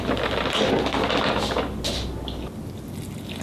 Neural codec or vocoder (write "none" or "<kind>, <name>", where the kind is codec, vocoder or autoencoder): none